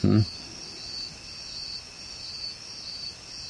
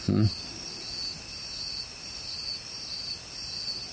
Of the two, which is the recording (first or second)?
first